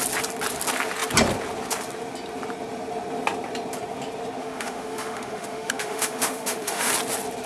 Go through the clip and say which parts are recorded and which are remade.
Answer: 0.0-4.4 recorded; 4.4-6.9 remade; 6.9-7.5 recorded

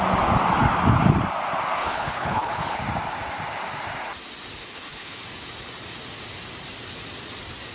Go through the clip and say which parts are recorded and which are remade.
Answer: 0.0-1.8 recorded; 1.8-2.8 remade; 2.8-4.6 recorded; 4.6-5.2 remade; 5.2-7.7 recorded